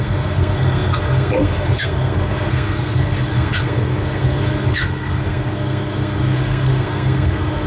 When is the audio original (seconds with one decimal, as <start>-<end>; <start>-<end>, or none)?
none